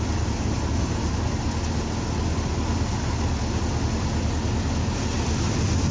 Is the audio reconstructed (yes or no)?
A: no